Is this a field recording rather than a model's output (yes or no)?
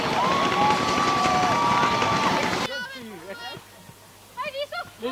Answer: yes